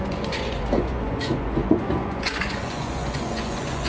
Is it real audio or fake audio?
fake